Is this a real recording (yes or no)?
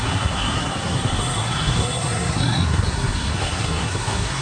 no